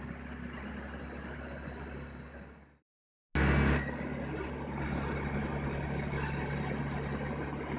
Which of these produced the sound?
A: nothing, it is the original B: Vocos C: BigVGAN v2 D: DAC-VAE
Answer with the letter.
A